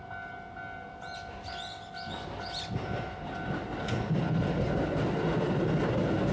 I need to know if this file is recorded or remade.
recorded